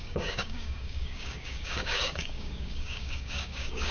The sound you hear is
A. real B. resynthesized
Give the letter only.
B